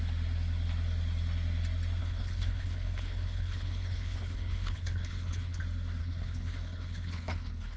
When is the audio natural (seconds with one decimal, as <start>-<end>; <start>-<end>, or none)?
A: 0.0-2.0; 5.6-6.0